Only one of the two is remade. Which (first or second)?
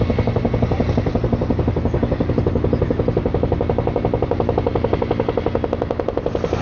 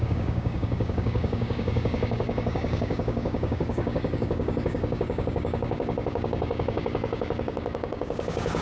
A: second